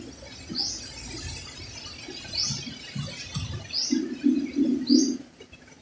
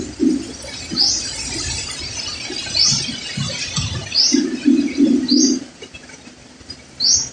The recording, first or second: first